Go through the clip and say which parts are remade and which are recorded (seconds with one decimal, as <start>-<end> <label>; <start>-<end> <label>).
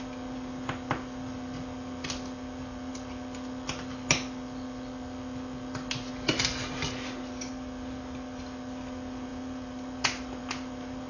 0.0-11.1 recorded